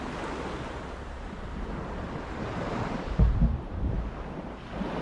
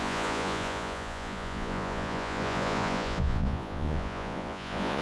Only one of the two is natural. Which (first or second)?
first